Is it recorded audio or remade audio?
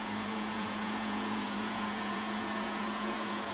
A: remade